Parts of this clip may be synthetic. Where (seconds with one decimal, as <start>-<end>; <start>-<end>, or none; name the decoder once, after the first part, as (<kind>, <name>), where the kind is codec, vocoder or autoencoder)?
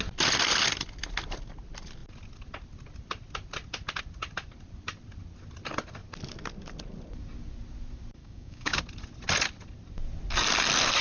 8.2-8.8 (codec, DAC)